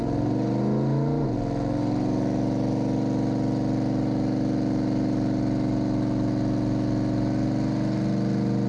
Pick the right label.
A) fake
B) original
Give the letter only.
B